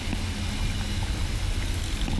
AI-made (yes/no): no